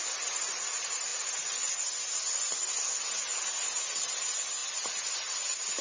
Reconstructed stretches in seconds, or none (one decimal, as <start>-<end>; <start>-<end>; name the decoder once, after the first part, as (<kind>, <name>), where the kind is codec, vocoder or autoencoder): none